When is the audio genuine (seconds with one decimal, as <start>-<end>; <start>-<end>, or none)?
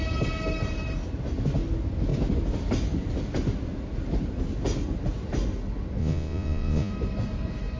0.0-6.0; 6.9-7.8